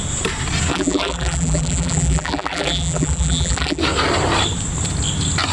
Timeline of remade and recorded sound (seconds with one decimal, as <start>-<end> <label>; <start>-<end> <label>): 0.0-0.7 recorded; 0.7-3.8 remade; 3.8-5.5 recorded